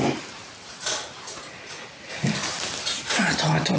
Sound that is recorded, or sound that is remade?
recorded